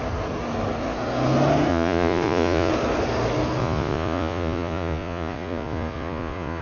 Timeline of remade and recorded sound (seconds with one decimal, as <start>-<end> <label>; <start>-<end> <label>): 0.0-1.7 recorded; 1.7-2.7 remade; 2.7-3.6 recorded; 3.6-6.6 remade